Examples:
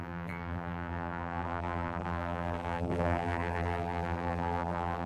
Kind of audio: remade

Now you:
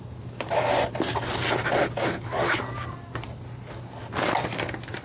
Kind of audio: recorded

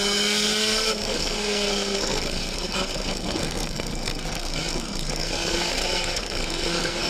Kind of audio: remade